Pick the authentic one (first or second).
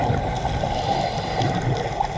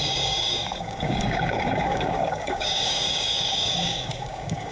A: first